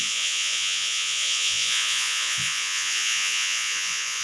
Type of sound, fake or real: fake